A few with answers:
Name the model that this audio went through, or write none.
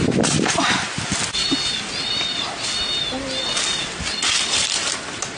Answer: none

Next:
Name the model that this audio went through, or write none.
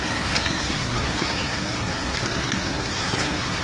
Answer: codec, SNAC